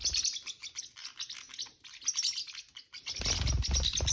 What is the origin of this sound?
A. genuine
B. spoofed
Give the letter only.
A